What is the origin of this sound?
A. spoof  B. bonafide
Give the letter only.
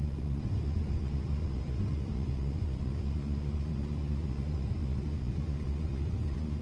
A